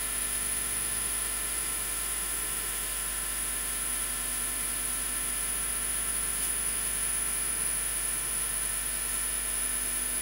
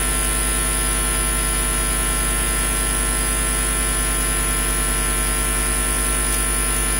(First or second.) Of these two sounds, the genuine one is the second